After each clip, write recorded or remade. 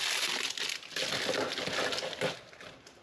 remade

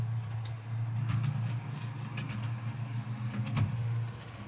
recorded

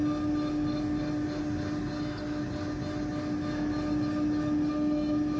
recorded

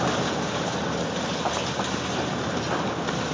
recorded